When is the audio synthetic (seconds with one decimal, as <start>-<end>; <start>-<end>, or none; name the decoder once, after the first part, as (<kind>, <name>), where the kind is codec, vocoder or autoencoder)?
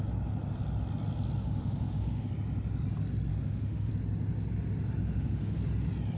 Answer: 1.4-2.3 (autoencoder, DAC-VAE); 3.3-3.9; 5.0-5.6